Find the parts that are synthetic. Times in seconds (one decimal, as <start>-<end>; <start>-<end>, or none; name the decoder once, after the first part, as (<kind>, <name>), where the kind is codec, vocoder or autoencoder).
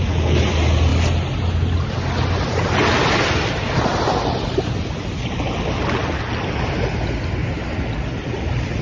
none